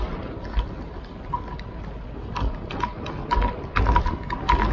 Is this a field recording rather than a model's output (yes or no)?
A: yes